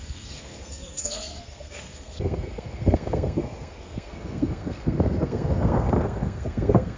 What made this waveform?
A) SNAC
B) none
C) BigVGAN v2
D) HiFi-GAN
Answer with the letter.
A